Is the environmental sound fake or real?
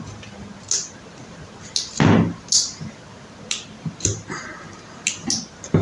real